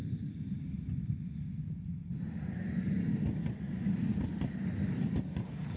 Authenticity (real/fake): real